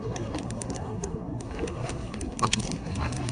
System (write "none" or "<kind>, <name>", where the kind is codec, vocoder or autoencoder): codec, SNAC